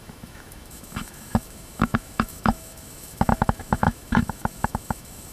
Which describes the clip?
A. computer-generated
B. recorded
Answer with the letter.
A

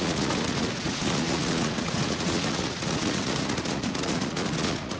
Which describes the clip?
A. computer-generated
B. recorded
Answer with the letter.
A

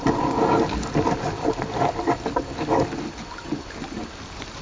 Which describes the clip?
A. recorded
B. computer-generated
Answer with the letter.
A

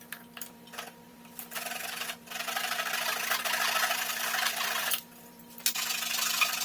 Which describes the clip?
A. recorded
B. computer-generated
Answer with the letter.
B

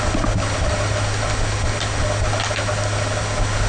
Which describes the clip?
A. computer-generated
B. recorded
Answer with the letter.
B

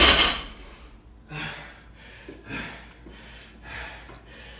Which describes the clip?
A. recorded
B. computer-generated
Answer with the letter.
A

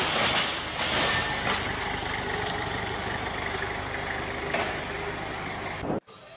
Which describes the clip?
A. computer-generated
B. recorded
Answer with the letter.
B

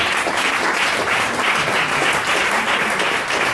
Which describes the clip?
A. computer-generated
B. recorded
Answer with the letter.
A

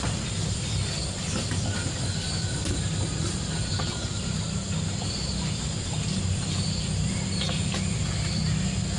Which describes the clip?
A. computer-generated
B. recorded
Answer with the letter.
B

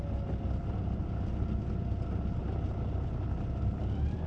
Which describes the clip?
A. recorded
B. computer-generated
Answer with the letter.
A